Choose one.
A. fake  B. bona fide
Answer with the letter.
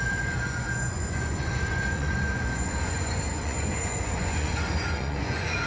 A